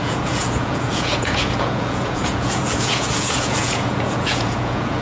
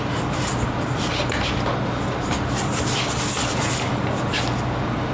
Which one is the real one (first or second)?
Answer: second